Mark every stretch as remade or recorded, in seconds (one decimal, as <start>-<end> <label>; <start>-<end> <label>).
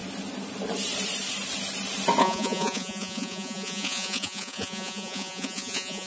0.0-2.2 recorded; 2.2-6.1 remade